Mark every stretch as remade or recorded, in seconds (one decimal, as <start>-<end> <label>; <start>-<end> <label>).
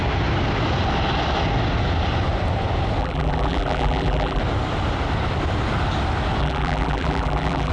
0.0-3.0 recorded; 3.0-4.4 remade; 4.4-6.4 recorded; 6.4-7.7 remade